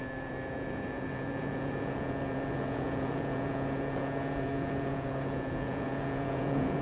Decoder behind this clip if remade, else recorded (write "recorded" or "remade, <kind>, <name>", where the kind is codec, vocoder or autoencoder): remade, vocoder, Vocos